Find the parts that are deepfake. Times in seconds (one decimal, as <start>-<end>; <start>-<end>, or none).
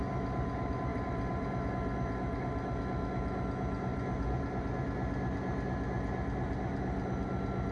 0.9-1.7